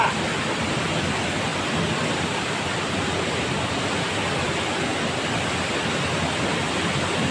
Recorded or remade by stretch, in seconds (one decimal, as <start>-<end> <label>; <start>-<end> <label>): 0.0-7.3 recorded